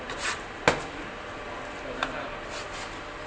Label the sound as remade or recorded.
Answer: recorded